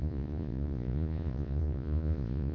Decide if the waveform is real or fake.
fake